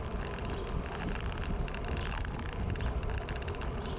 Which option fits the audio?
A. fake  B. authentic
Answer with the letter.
B